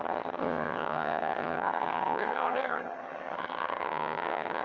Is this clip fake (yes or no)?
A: yes